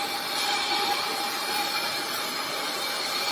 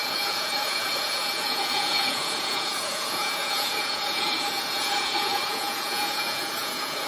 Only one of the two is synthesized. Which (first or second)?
second